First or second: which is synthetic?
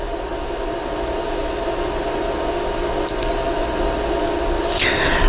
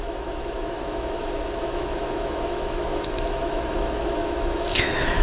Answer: second